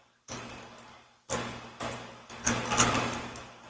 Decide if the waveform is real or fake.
real